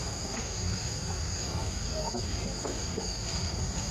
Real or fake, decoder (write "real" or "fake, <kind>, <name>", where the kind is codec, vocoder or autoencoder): fake, codec, DAC